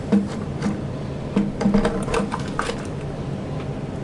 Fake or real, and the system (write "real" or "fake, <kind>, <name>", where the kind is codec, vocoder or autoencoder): fake, vocoder, BigVGAN v2